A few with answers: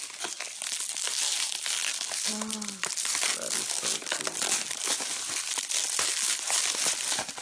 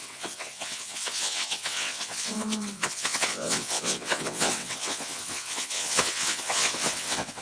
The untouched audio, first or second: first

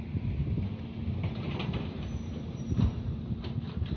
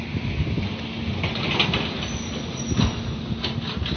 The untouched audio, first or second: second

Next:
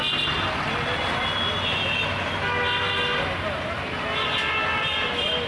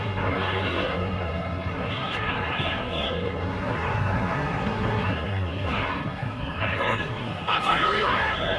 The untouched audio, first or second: first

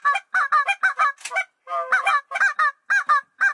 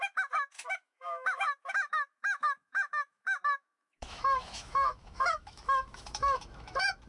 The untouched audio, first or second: first